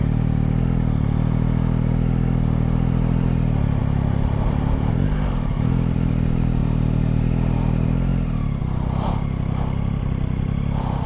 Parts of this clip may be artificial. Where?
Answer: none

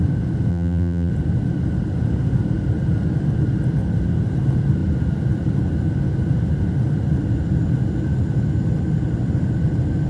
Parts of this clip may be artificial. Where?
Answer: 0.5-1.1 (vocoder, BigVGAN v2)

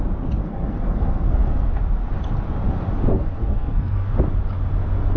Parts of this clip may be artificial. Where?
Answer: 0.4-1.7 (codec, SNAC); 3.1-4.1

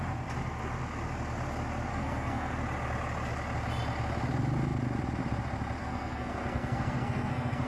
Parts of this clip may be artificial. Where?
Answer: 1.9-2.5 (codec, SNAC); 5.8-7.7

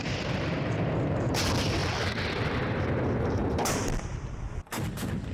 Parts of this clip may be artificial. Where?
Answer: 1.8-2.5 (vocoder, BigVGAN v2); 3.4-4.5

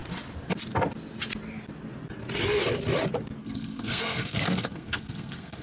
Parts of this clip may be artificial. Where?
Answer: 3.4-5.6 (codec, SNAC)

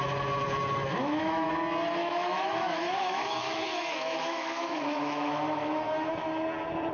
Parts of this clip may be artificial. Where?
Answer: 1.0-1.5 (autoencoder, DAC-VAE); 2.0-6.1